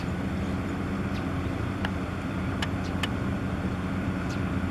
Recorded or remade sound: remade